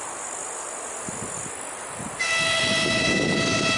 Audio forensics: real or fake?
real